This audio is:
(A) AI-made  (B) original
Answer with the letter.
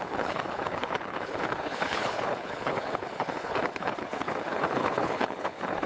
A